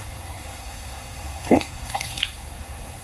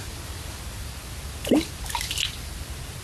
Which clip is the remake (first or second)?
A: first